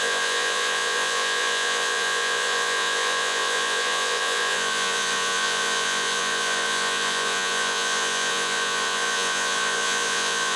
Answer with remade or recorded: remade